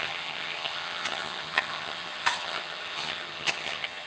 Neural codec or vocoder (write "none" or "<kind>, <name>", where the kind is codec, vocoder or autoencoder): vocoder, HiFi-GAN